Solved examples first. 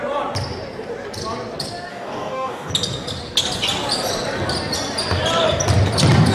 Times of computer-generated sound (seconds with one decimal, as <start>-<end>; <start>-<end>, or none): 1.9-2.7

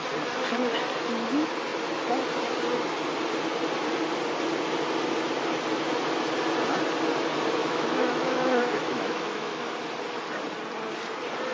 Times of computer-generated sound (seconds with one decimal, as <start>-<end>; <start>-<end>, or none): 7.6-9.7

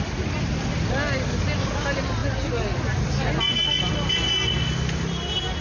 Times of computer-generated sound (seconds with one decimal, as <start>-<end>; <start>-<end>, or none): none

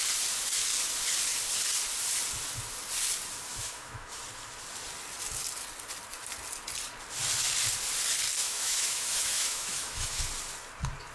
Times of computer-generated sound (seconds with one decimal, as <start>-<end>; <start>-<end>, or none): 3.5-4.2; 8.4-10.2

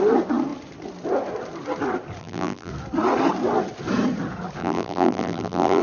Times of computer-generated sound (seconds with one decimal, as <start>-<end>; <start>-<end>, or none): 2.2-2.7; 4.6-5.8